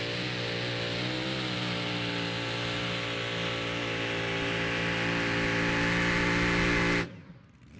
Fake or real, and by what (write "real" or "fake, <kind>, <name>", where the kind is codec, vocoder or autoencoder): real